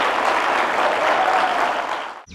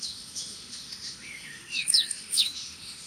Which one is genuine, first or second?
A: first